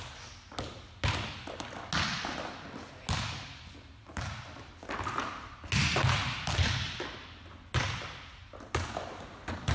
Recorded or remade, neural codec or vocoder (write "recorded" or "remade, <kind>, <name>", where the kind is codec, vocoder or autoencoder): recorded